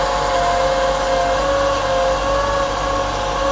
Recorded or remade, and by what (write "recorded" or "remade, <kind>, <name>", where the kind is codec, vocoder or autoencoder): recorded